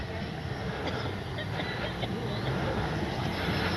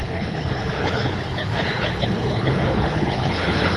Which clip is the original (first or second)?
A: first